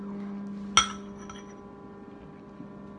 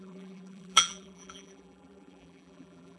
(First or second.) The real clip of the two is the first